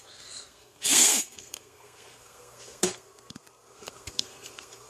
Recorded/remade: remade